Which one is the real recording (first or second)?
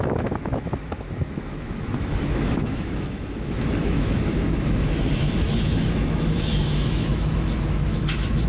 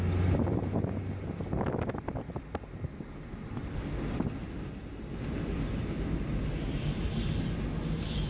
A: second